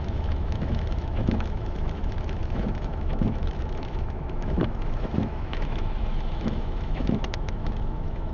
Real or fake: fake